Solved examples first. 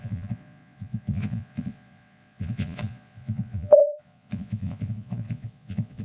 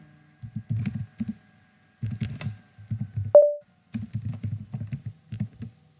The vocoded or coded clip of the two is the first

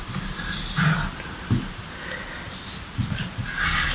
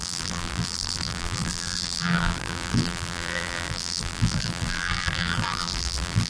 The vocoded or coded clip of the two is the second